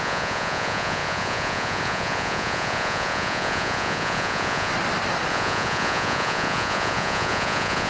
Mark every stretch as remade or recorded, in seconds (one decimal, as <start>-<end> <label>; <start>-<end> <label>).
0.0-4.7 remade; 4.7-5.3 recorded; 5.3-7.9 remade